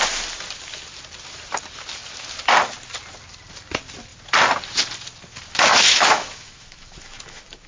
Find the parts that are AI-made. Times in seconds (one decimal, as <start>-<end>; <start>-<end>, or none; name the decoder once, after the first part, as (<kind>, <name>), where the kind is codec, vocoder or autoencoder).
5.7-7.7 (autoencoder, DAC-VAE)